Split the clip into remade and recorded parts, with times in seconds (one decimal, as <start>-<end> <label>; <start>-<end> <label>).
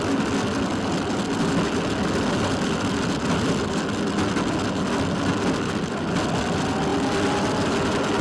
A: 0.0-8.2 recorded